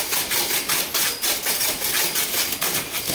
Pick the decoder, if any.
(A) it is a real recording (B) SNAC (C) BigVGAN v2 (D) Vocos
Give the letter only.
A